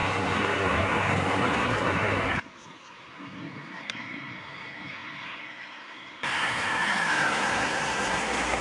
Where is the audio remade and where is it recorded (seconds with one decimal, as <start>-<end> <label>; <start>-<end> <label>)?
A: 0.0-8.6 remade